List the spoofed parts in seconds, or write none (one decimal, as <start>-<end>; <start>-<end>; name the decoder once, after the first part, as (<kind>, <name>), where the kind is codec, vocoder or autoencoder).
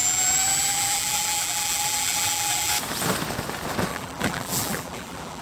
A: 0.0-2.7 (vocoder, BigVGAN v2); 3.9-5.4